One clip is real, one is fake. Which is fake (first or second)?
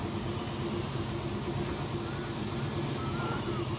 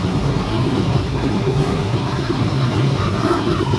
second